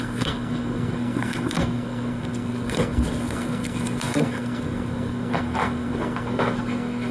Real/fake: fake